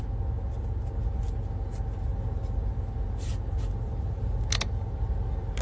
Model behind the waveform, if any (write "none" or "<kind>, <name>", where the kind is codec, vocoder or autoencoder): none